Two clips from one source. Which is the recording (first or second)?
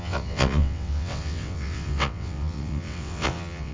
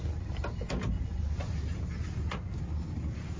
second